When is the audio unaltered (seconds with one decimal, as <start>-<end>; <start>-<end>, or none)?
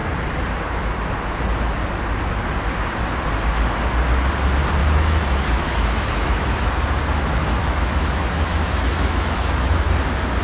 0.0-4.8; 6.7-7.6; 9.9-10.4